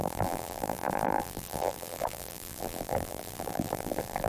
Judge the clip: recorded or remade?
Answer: remade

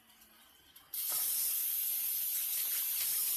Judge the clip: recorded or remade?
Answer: remade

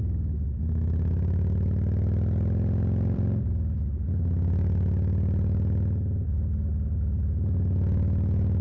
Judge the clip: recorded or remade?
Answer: recorded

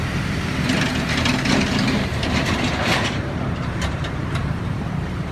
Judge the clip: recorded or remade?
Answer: remade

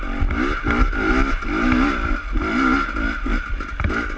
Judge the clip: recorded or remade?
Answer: recorded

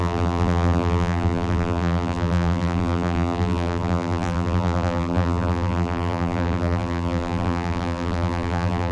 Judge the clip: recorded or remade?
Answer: remade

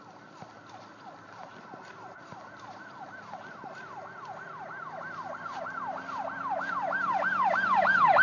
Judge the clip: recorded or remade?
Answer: remade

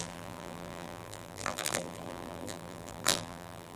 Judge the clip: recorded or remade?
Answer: remade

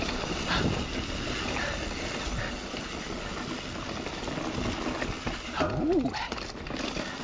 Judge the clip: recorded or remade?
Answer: recorded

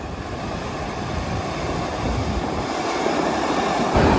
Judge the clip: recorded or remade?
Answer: recorded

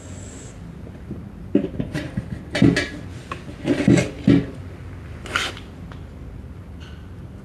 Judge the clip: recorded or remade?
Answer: recorded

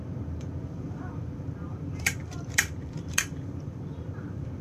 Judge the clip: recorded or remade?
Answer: remade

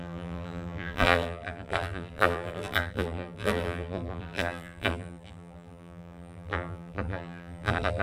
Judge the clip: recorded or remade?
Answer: remade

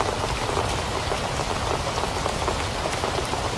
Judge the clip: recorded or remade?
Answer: remade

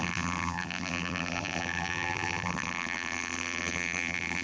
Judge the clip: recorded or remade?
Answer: remade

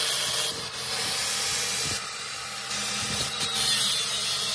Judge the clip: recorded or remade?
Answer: recorded